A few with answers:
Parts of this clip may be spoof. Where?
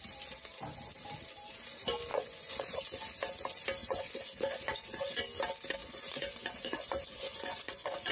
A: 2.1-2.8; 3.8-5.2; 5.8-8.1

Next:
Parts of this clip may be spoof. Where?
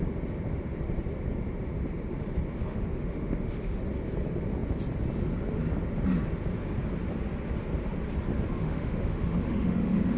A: 2.6-3.8; 8.6-10.2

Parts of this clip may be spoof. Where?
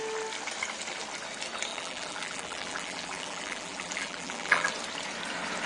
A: 1.7-4.7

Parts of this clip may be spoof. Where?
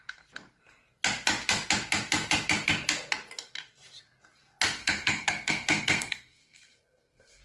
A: 4.8-7.4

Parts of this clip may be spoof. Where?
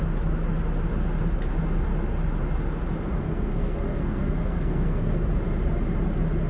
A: 3.1-5.3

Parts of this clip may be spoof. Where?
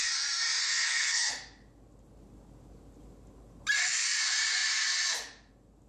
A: 0.6-1.3